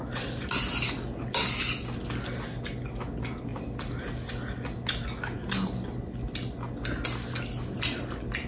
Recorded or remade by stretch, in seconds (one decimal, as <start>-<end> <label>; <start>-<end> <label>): 0.0-8.5 recorded